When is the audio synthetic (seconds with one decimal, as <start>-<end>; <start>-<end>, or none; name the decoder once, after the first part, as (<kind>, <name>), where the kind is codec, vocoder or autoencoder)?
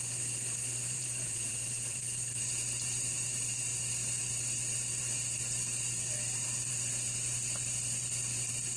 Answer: 0.8-2.0 (vocoder, Vocos)